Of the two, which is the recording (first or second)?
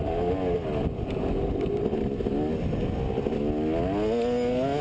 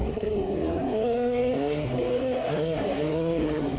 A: first